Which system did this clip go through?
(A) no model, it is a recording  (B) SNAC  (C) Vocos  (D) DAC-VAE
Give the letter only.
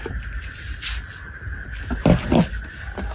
A